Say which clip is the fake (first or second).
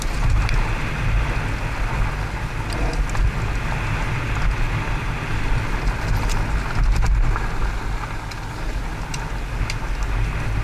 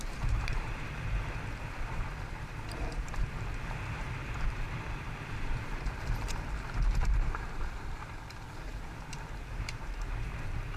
second